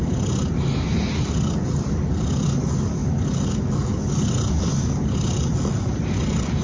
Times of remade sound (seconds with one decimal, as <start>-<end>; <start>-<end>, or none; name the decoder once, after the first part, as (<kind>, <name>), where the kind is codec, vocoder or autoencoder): none